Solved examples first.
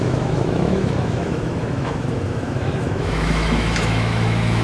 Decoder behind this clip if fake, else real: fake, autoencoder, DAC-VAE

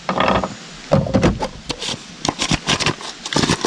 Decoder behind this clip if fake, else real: real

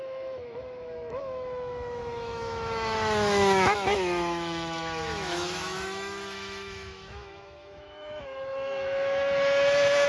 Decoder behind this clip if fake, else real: fake, autoencoder, DAC-VAE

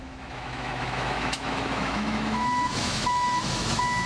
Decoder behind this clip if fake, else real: fake, autoencoder, DAC-VAE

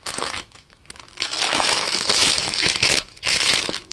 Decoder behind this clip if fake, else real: fake, autoencoder, DAC-VAE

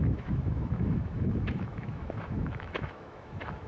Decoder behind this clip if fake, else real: fake, autoencoder, DAC-VAE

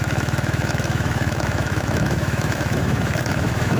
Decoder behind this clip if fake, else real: fake, autoencoder, DAC-VAE